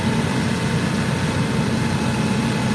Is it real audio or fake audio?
real